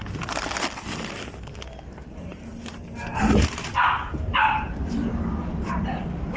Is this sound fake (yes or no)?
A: yes